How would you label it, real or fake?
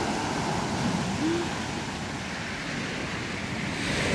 real